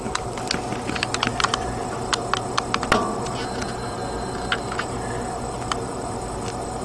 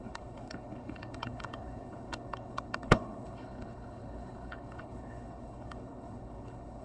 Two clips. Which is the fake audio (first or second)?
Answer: second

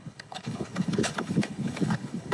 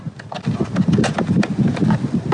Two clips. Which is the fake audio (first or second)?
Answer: first